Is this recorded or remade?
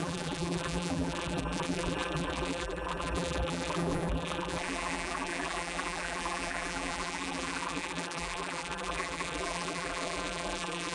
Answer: remade